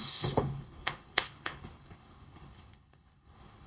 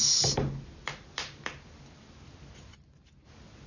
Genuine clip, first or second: second